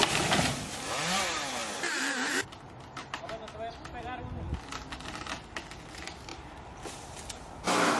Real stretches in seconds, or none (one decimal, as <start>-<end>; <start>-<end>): 0.0-8.0